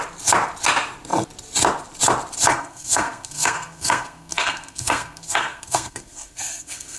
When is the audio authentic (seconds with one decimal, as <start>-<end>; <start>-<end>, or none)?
0.0-2.5